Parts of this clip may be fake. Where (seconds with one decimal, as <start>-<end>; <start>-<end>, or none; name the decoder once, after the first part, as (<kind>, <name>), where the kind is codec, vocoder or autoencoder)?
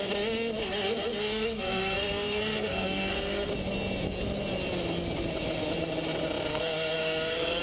0.6-3.5 (codec, SNAC); 6.5-7.6